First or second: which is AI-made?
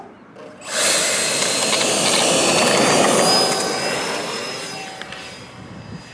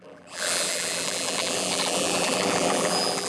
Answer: second